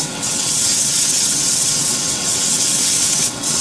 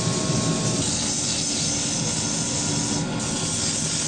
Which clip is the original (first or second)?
second